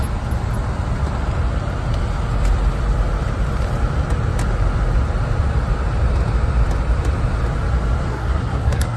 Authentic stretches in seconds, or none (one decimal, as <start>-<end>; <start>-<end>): 0.0-8.1